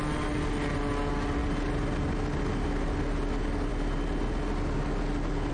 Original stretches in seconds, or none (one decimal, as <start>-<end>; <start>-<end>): 0.0-5.5